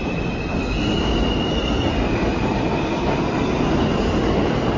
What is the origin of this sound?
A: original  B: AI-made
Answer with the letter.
A